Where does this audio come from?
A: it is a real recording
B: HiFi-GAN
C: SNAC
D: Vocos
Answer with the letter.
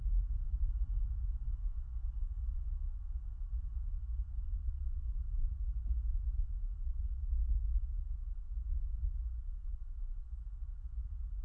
A